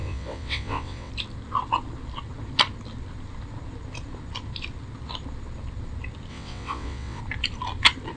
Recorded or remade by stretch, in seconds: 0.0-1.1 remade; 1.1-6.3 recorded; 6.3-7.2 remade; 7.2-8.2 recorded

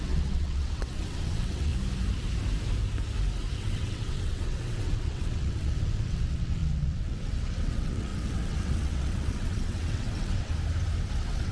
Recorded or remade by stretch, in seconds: 0.0-1.7 remade; 1.7-3.6 recorded; 3.6-10.5 remade; 10.5-11.1 recorded; 11.1-11.5 remade

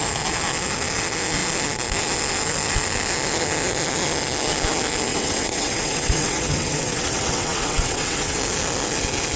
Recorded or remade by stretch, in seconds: 0.0-5.1 recorded; 5.1-8.4 remade; 8.4-9.4 recorded

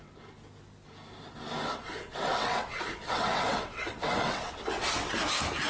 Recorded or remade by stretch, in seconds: 0.0-1.7 recorded; 1.7-5.1 remade; 5.1-5.7 recorded

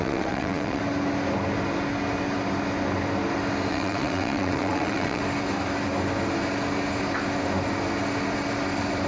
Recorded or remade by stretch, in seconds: 0.0-0.8 remade; 0.8-3.7 recorded; 3.7-5.2 remade; 5.2-9.1 recorded

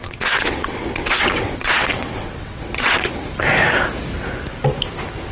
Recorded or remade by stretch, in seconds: 0.0-3.2 remade; 3.2-5.3 recorded

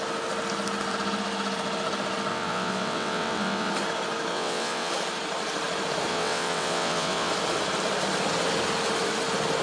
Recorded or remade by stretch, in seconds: 0.0-2.3 recorded; 2.3-3.7 remade; 3.7-4.3 recorded; 4.3-4.9 remade; 4.9-6.1 recorded; 6.1-7.3 remade; 7.3-9.6 recorded

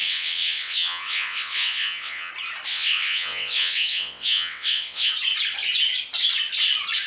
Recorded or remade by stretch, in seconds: 0.0-2.3 remade; 2.3-2.7 recorded; 2.7-5.1 remade; 5.1-7.1 recorded